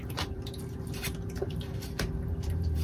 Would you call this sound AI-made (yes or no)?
yes